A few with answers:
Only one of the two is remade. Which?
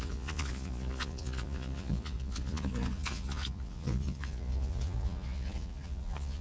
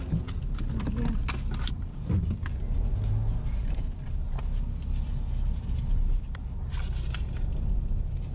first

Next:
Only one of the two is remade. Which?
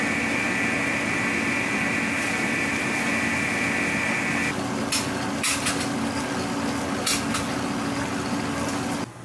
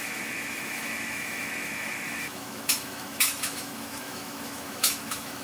second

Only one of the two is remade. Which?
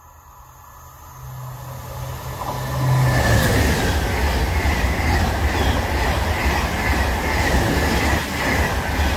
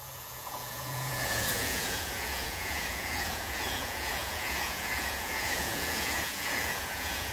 second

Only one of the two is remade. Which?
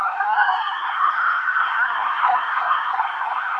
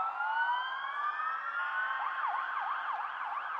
first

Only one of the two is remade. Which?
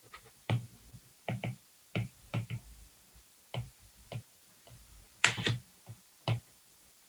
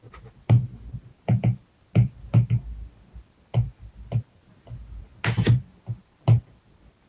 first